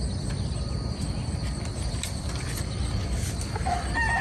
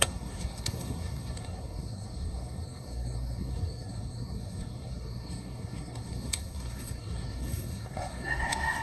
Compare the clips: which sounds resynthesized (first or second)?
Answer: second